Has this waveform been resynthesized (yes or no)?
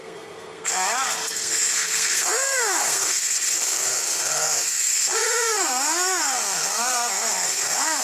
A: yes